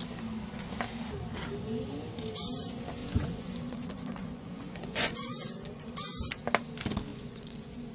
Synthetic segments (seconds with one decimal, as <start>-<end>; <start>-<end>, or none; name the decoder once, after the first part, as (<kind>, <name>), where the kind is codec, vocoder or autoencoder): 3.0-5.8 (vocoder, Vocos); 7.1-7.9